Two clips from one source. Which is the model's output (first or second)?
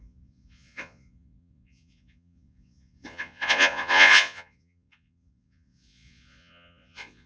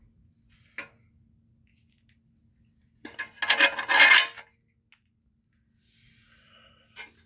first